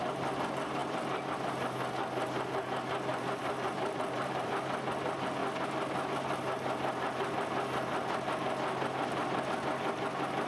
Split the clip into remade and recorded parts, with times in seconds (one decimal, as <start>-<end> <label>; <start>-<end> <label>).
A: 0.0-3.1 recorded; 3.1-4.5 remade; 4.5-10.5 recorded